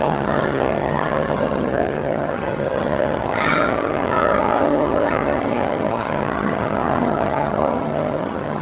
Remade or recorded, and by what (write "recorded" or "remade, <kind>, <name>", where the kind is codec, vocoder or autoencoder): remade, vocoder, HiFi-GAN